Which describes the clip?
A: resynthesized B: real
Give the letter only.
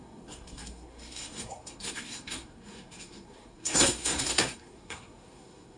A